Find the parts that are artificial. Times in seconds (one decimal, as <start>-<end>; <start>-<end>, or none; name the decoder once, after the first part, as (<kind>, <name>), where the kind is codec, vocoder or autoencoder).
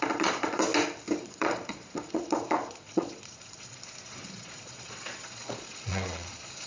0.0-0.7 (vocoder, Vocos); 1.2-6.7